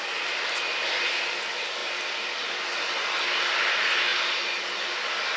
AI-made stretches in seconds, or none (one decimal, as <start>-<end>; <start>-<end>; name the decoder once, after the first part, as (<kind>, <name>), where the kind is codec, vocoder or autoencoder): 1.8-2.7 (vocoder, BigVGAN v2)